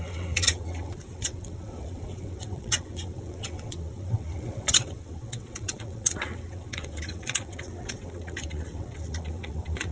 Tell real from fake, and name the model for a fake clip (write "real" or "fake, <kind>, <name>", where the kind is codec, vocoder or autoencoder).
fake, vocoder, WaveNeXt